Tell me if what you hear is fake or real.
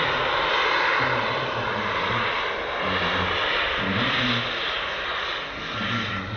real